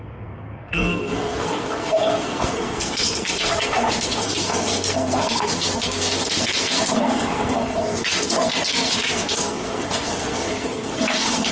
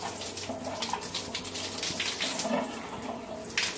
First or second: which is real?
second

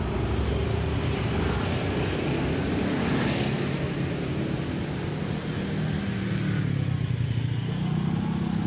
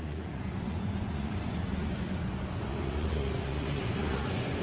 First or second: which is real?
first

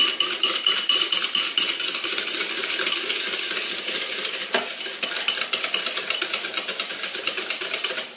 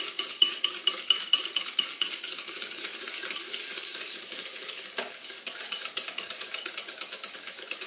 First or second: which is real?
first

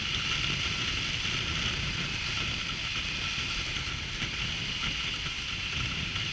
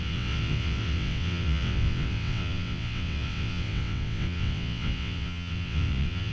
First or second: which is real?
first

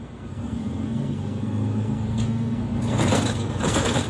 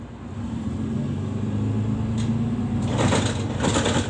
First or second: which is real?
second